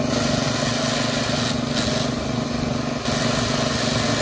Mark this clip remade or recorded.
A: recorded